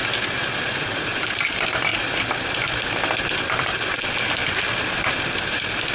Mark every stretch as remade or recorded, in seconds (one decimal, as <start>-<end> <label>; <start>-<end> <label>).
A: 0.0-0.6 recorded; 0.6-1.9 remade; 1.9-5.4 recorded; 5.4-5.9 remade